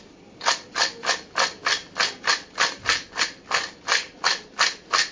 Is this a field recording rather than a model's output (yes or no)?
yes